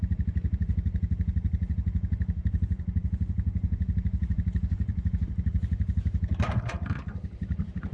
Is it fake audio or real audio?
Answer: fake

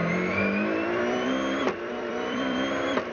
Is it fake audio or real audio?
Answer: fake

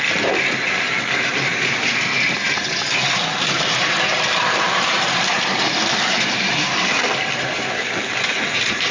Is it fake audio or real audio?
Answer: fake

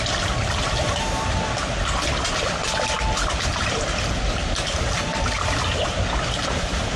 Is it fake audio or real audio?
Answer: real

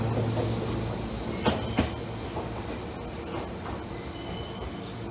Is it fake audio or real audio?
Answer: real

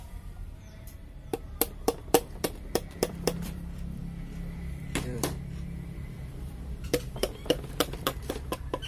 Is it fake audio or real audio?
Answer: fake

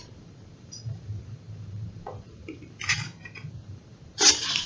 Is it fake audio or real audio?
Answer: fake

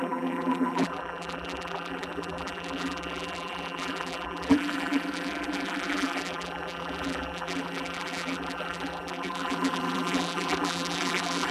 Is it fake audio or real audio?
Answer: fake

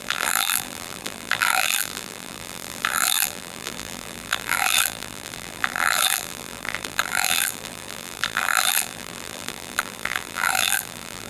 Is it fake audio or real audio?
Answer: fake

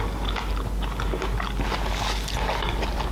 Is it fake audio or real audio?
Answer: real